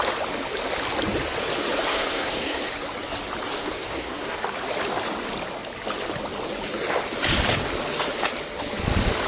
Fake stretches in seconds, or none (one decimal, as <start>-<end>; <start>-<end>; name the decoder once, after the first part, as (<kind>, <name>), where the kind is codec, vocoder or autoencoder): 1.9-2.6 (codec, SNAC); 3.6-4.4